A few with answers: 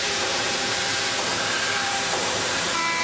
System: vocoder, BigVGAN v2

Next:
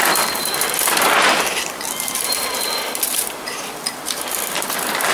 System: vocoder, BigVGAN v2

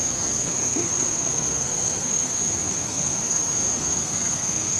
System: codec, SNAC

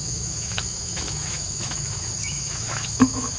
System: autoencoder, DAC-VAE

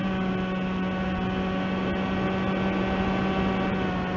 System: none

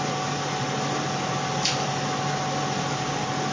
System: none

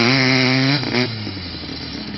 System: none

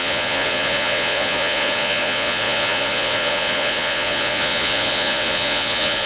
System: vocoder, Vocos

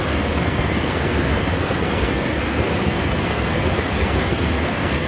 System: codec, SNAC